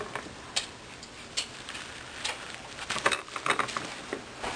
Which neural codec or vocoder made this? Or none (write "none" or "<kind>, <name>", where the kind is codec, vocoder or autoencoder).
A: none